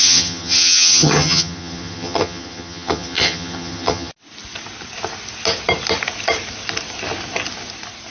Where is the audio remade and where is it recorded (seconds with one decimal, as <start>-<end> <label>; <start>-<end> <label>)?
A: 0.0-4.1 remade; 4.1-8.1 recorded